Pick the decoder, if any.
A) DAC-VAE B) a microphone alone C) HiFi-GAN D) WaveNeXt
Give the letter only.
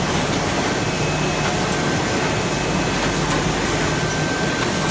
B